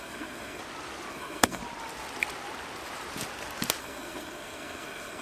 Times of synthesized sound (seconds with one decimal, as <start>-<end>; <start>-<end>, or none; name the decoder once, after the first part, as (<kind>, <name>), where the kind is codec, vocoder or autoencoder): 0.0-0.6 (codec, SNAC); 1.1-1.6; 3.8-5.2